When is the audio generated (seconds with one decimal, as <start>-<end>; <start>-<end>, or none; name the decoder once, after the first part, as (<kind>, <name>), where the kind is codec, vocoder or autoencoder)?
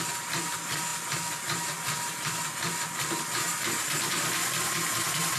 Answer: none